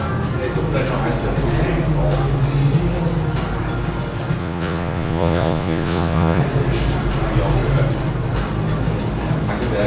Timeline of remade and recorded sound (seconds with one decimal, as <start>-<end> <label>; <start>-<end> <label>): 0.0-4.4 recorded; 4.4-6.4 remade; 6.4-9.9 recorded

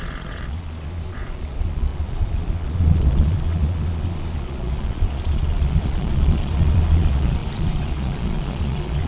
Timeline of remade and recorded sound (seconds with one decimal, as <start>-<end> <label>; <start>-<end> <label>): 0.0-9.1 remade

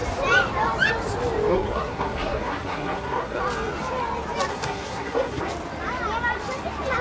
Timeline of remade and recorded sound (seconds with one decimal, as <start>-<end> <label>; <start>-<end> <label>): 0.0-1.5 recorded; 1.5-3.4 remade; 3.4-4.5 recorded; 4.5-5.4 remade; 5.4-7.0 recorded

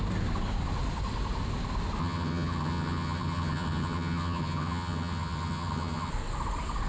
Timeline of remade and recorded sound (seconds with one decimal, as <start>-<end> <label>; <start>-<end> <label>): 0.0-2.0 recorded; 2.0-6.1 remade; 6.1-6.9 recorded

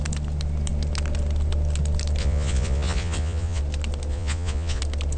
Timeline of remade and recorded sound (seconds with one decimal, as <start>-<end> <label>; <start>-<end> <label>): 0.0-2.2 recorded; 2.2-3.6 remade; 3.6-4.1 recorded; 4.1-4.8 remade; 4.8-5.2 recorded